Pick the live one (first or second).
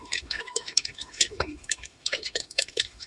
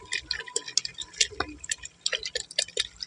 second